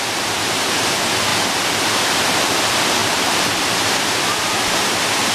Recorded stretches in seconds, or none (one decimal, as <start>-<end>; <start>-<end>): 0.0-3.0